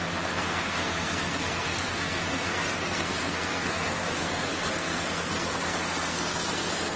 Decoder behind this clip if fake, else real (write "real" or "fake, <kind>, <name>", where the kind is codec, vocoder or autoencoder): fake, codec, SNAC